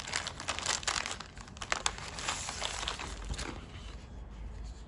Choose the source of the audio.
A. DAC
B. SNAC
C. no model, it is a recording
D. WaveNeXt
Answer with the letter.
C